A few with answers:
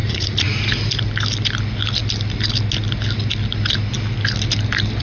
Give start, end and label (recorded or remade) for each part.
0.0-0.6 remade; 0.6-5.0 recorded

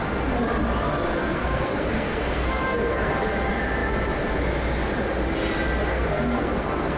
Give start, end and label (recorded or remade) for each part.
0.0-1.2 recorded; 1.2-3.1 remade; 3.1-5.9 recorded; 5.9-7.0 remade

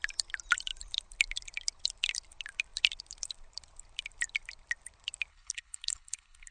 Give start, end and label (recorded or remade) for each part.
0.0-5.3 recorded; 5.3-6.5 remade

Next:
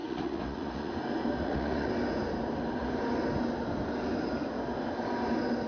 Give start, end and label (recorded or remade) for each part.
0.0-0.9 remade; 0.9-1.4 recorded; 1.4-1.9 remade; 1.9-5.7 recorded

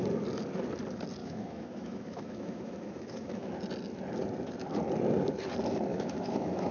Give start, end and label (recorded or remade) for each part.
0.0-1.2 recorded; 1.2-3.6 remade; 3.6-5.9 recorded; 5.9-6.7 remade

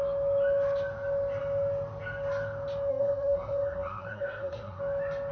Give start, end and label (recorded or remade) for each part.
0.0-2.9 recorded; 2.9-4.8 remade; 4.8-5.3 recorded

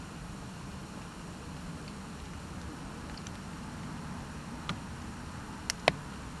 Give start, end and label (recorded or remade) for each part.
0.0-6.4 recorded